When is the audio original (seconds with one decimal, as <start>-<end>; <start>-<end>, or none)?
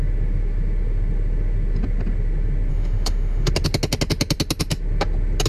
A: 0.0-2.7; 3.5-5.5